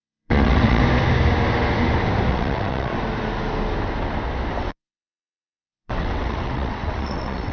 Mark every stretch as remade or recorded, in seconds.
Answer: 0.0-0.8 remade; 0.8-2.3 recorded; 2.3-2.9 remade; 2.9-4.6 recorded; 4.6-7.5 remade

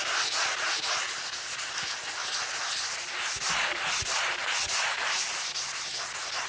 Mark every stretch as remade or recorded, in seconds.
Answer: 0.0-6.5 recorded